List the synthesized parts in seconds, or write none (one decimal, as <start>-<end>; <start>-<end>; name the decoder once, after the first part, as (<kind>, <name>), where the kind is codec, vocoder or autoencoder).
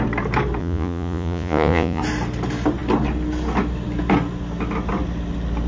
0.6-2.0 (vocoder, Vocos)